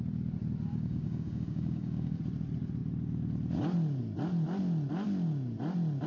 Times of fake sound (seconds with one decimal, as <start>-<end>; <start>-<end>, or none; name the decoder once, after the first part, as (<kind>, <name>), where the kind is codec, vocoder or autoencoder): 0.7-2.2 (codec, DAC)